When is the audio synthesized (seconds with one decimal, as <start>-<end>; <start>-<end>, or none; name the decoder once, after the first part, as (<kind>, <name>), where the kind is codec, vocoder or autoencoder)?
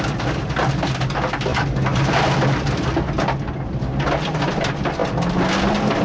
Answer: none